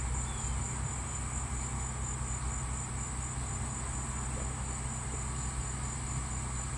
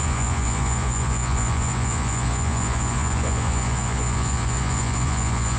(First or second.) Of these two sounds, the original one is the first